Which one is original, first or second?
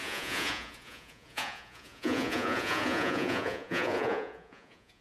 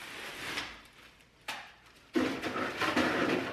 second